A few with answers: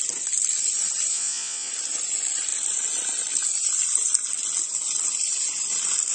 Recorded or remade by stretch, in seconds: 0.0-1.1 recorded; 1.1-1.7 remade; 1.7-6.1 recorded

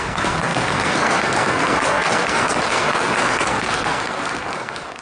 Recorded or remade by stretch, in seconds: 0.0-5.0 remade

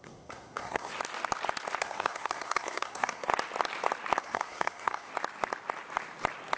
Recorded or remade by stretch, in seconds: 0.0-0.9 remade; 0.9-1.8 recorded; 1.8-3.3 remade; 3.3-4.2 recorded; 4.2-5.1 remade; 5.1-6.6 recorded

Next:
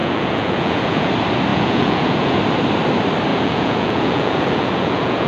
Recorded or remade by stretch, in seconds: 0.0-1.1 remade; 1.1-1.5 recorded; 1.5-2.4 remade; 2.4-3.3 recorded; 3.3-5.3 remade

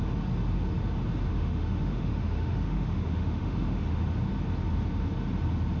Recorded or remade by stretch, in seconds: 0.0-1.3 recorded; 1.3-4.0 remade; 4.0-5.8 recorded

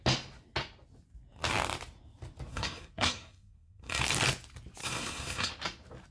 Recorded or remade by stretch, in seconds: 0.0-2.5 recorded; 2.5-4.0 remade; 4.0-4.8 recorded; 4.8-5.5 remade; 5.5-6.1 recorded

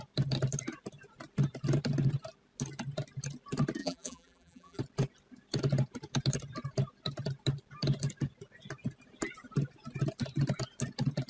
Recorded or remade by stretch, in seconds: 0.0-3.8 recorded; 3.8-4.8 remade; 4.8-11.3 recorded

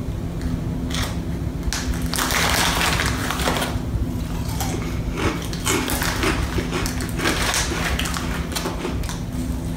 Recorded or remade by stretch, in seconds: 0.0-3.2 recorded; 3.2-4.4 remade; 4.4-9.8 recorded